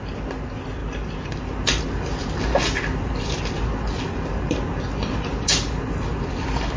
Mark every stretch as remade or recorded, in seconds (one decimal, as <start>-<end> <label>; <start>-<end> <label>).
0.0-6.8 recorded